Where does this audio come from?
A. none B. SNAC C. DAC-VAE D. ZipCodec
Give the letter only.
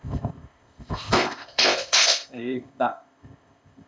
D